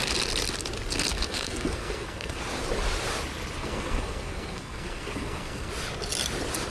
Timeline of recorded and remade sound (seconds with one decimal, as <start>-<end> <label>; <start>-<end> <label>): 0.0-1.1 recorded; 1.1-2.4 remade; 2.4-3.6 recorded; 3.6-5.7 remade; 5.7-6.7 recorded